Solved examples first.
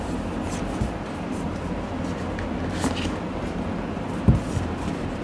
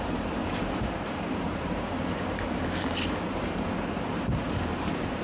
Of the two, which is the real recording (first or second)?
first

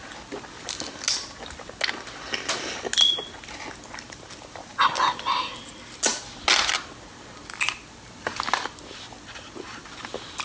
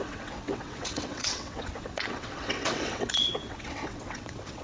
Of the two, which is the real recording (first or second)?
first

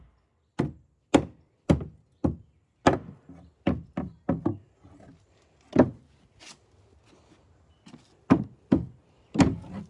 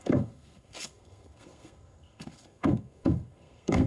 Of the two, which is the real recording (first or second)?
first